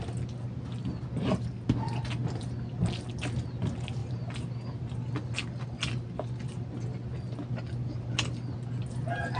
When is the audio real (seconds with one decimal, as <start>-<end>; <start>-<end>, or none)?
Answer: 0.0-9.4